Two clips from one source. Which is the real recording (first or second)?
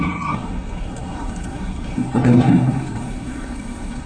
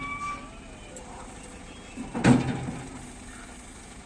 second